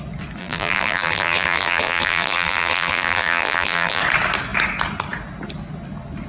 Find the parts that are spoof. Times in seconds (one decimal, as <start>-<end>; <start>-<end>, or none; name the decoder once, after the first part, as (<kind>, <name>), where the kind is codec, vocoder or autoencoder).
0.4-4.0 (vocoder, BigVGAN v2)